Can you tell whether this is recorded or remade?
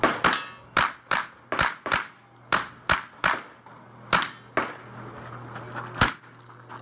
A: recorded